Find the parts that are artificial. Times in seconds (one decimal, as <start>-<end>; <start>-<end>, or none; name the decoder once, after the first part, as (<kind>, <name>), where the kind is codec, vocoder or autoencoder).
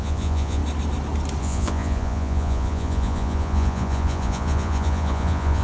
0.0-0.6 (vocoder, Vocos); 1.4-5.6